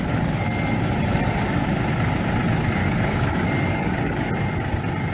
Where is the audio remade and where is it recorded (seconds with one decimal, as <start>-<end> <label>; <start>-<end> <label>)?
0.0-2.8 recorded; 2.8-4.3 remade; 4.3-5.1 recorded